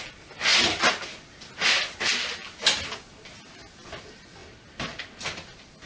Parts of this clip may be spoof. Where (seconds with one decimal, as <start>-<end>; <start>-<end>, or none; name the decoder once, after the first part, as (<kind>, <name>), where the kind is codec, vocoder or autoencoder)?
none